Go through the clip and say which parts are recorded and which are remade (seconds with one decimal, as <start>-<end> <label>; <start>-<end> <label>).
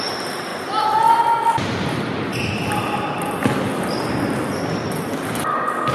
0.0-5.9 recorded